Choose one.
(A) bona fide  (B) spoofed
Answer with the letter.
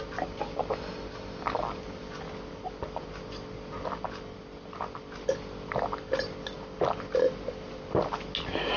A